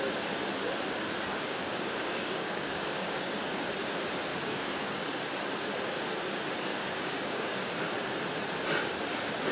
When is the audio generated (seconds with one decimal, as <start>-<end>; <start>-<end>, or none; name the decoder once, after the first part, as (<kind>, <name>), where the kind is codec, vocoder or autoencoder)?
1.3-3.7 (codec, DAC); 4.3-5.0; 6.7-7.7